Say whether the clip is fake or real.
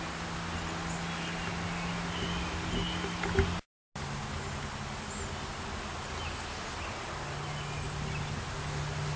real